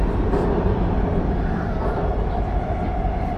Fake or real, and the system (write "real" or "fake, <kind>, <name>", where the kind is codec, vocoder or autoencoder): real